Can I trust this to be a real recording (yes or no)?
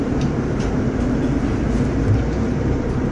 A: no